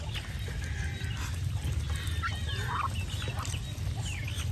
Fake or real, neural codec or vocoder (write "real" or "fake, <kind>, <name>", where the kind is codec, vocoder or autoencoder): real